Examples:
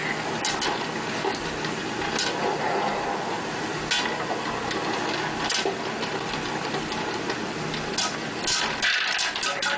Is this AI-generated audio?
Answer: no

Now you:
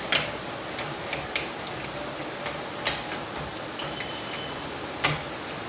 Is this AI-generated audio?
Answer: no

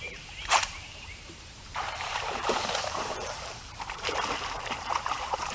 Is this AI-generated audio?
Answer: yes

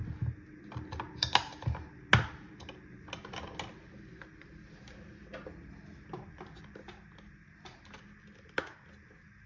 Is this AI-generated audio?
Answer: no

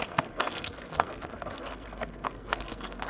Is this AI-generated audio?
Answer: yes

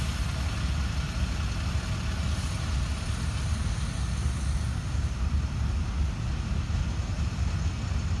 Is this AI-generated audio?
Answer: no